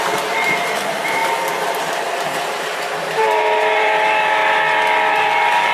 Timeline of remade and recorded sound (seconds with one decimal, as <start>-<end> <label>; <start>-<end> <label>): 0.0-4.4 remade; 4.4-5.1 recorded; 5.1-5.7 remade